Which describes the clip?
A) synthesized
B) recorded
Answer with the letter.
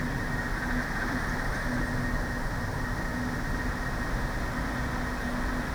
B